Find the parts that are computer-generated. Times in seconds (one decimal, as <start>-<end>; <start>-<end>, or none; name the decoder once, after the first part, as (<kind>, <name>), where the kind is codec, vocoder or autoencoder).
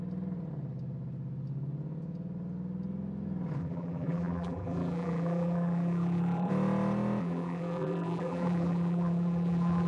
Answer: 3.6-6.5 (vocoder, BigVGAN v2); 7.2-9.9